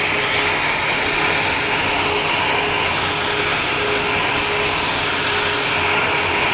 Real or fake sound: real